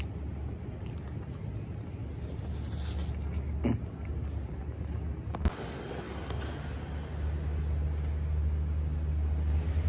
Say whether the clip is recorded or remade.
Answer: recorded